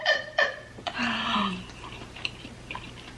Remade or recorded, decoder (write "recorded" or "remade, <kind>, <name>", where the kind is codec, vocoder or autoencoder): remade, vocoder, BigVGAN v2